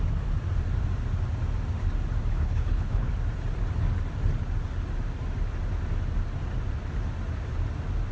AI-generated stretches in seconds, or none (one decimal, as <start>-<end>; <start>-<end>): 2.3-3.1